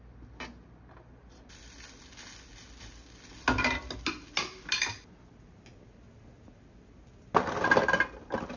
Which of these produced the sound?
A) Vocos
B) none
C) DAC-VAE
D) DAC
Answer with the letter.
B